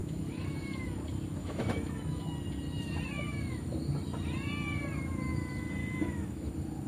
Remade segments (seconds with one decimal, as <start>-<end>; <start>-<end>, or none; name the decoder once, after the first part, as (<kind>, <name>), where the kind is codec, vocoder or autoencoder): 0.0-0.6 (autoencoder, DAC-VAE); 1.4-2.2; 5.8-6.5